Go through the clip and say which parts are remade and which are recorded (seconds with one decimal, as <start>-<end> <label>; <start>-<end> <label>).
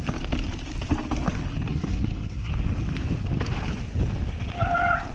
0.0-1.7 recorded; 1.7-2.5 remade; 2.5-5.1 recorded